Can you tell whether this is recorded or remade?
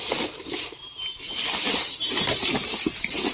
remade